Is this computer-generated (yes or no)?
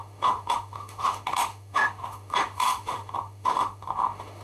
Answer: yes